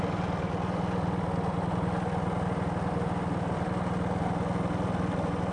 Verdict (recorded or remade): recorded